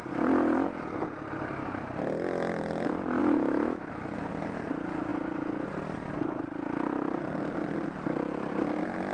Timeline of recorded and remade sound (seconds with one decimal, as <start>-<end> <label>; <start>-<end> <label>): 0.0-3.2 recorded; 3.2-4.3 remade; 4.3-9.1 recorded